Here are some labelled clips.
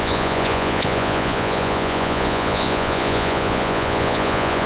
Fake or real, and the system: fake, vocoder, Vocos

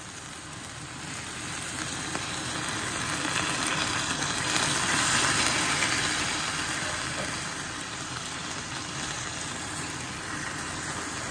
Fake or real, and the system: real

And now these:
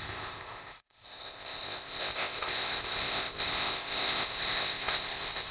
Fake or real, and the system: fake, codec, ZipCodec